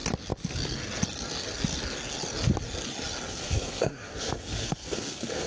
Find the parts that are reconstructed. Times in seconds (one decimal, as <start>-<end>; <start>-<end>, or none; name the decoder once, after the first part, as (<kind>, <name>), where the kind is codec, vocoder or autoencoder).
3.3-5.5 (codec, SNAC)